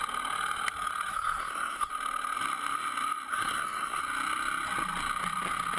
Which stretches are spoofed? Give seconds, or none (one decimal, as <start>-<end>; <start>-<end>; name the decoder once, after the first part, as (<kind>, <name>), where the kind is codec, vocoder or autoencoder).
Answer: 1.1-1.9 (codec, SNAC); 3.3-4.0